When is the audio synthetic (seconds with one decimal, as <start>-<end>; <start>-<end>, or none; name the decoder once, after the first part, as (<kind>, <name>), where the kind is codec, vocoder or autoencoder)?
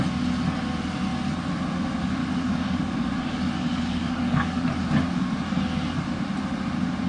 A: 2.2-4.7 (codec, DAC)